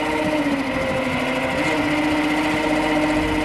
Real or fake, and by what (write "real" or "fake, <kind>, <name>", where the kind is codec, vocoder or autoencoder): real